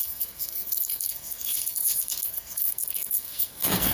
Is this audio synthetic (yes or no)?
yes